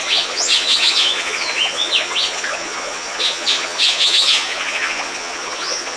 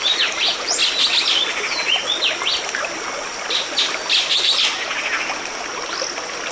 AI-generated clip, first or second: first